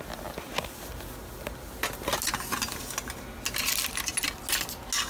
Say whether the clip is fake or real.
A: real